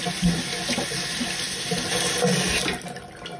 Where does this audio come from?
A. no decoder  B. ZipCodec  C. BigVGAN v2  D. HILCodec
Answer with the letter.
A